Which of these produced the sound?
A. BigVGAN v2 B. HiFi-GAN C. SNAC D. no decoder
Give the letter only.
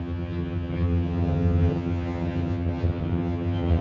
B